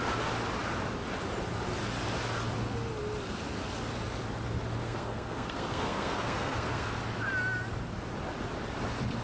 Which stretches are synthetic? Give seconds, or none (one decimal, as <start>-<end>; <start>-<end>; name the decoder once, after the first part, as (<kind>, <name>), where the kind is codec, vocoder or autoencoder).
4.8-6.9 (codec, SNAC)